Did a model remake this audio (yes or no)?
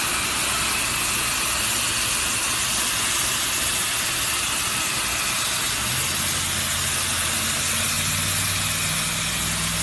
no